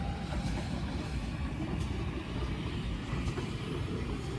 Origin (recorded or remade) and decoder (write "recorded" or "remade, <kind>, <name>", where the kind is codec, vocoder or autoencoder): recorded